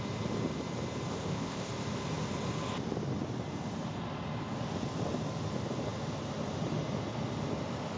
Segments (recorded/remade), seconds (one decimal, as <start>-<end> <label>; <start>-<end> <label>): 0.0-1.1 recorded; 1.1-1.7 remade; 1.7-8.0 recorded